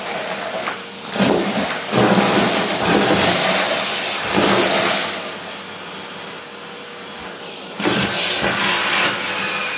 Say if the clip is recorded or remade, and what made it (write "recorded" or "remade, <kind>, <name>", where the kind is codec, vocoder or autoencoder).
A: recorded